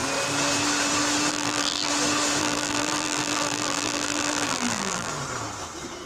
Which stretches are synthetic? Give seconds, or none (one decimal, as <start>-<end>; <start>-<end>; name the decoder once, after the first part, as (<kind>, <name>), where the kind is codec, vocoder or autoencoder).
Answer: 1.3-1.9 (vocoder, BigVGAN v2); 2.4-5.1

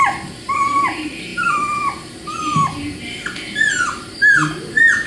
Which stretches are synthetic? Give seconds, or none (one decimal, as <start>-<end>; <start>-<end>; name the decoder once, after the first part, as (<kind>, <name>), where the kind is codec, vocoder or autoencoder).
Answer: none

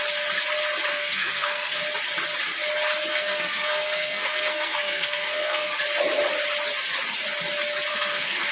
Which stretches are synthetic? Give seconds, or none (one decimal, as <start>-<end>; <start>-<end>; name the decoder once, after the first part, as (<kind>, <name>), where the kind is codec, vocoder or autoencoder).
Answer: 0.9-1.8 (codec, SNAC); 3.1-5.8; 7.9-8.5

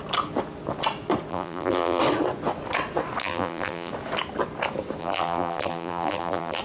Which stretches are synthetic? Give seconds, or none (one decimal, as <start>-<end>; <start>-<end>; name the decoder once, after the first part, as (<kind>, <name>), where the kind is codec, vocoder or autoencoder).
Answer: 1.3-2.0 (vocoder, BigVGAN v2); 3.2-3.9; 5.0-6.6